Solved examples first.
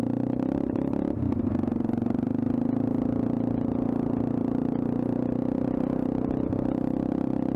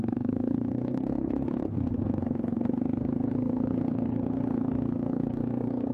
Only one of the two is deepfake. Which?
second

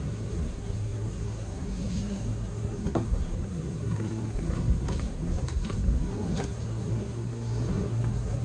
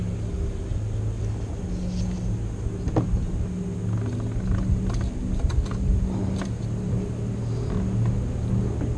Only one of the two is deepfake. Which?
first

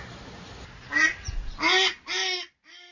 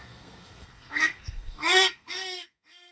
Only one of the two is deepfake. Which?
second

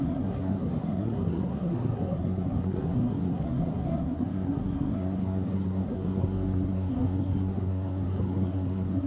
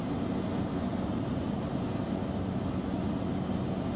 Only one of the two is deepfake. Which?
first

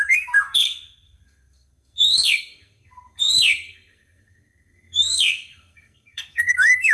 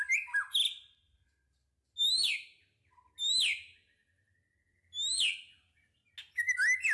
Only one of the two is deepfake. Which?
first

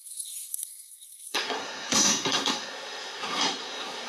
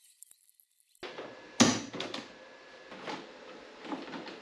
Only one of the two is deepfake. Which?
first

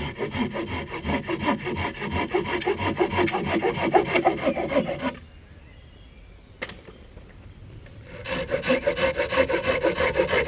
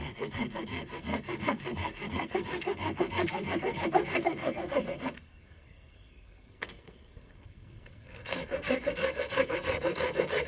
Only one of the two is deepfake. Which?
second